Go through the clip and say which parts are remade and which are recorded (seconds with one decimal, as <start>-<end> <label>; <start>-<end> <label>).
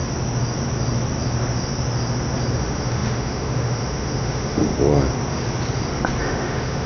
0.0-2.5 recorded; 2.5-4.7 remade; 4.7-6.2 recorded; 6.2-6.9 remade